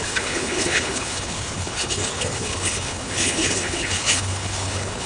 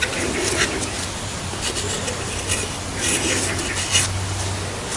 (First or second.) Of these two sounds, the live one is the second